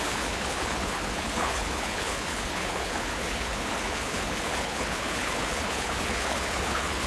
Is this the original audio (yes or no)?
no